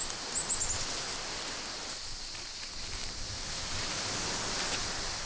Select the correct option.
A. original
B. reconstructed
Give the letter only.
A